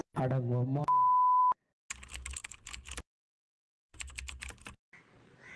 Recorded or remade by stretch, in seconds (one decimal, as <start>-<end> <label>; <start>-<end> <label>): 0.0-2.4 recorded; 2.4-5.0 remade; 5.0-5.6 recorded